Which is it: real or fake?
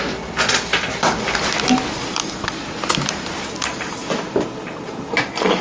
real